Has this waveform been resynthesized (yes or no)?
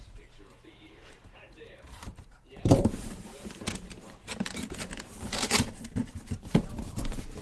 yes